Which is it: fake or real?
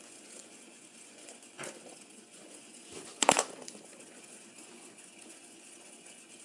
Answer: fake